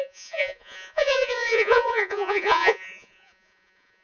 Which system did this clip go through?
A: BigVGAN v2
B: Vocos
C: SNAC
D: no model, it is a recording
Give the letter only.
B